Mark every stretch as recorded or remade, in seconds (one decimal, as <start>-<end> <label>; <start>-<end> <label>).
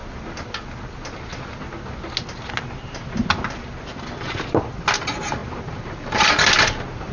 0.0-5.4 recorded; 5.4-6.3 remade; 6.3-7.1 recorded